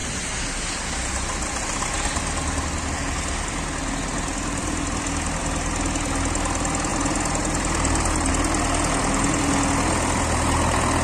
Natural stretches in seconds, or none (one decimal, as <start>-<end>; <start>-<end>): 0.0-6.9; 8.3-11.0